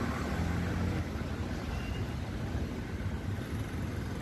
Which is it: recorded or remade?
recorded